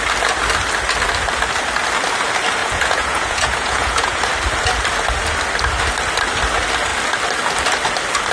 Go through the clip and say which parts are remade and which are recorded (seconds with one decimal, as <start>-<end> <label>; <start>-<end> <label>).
0.0-2.6 recorded; 2.6-4.2 remade; 4.2-8.3 recorded